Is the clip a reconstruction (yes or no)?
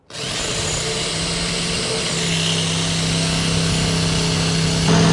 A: no